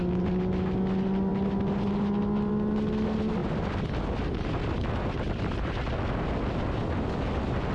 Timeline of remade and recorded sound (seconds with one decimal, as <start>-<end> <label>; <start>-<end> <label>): 0.0-7.7 recorded